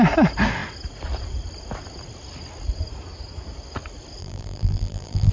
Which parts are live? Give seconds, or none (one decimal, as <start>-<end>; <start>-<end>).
0.0-4.2